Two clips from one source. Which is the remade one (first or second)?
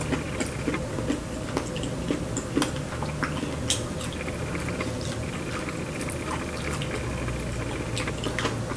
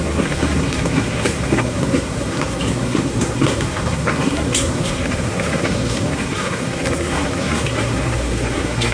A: second